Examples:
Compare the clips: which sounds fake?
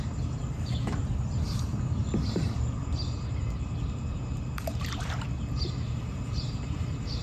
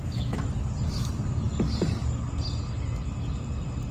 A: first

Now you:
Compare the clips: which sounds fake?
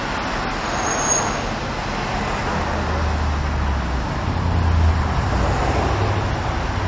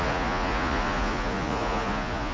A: second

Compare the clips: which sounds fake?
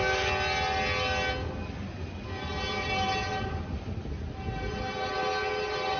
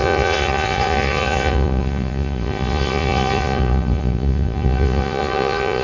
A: second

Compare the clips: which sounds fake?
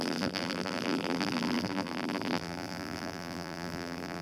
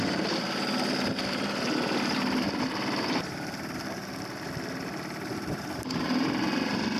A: first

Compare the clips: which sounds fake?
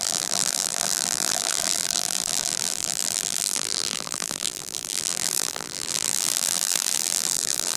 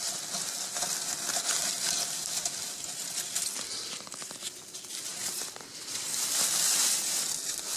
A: first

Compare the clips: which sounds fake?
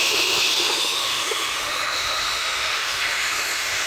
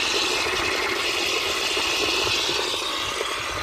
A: first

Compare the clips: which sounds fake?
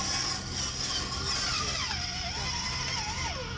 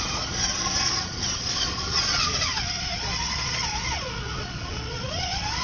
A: second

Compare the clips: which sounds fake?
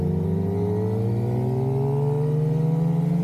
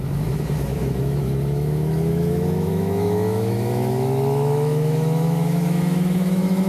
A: second